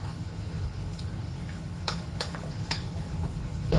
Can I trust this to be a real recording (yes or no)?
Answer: no